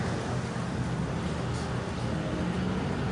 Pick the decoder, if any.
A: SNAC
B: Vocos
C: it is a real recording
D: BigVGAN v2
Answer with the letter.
C